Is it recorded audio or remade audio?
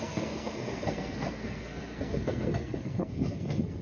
remade